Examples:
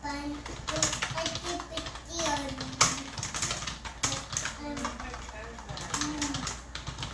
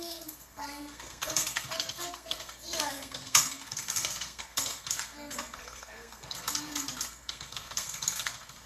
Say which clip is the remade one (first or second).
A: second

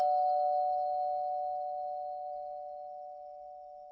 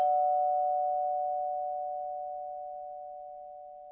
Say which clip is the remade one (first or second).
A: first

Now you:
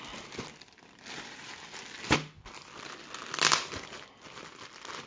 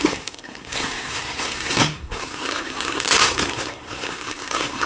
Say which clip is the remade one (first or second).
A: second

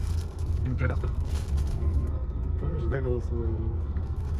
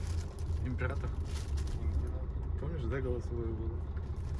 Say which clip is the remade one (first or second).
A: first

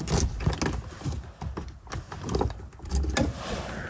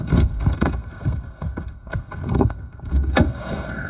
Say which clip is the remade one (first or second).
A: second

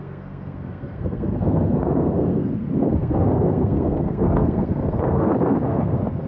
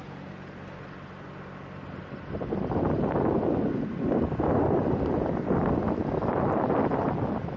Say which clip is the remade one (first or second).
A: first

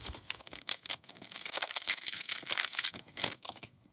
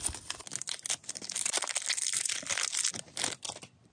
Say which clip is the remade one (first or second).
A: first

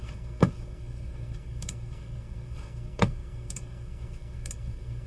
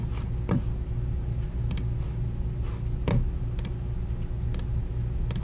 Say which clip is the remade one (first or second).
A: first